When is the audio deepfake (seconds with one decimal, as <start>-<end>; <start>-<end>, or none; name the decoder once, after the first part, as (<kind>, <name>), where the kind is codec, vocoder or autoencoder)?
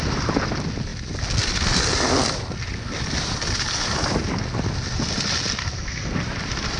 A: 5.6-6.2 (codec, SNAC)